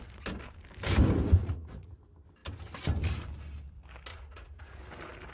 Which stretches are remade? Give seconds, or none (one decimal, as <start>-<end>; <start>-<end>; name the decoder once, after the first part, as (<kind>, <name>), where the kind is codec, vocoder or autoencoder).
1.4-2.0 (vocoder, Vocos); 4.1-4.8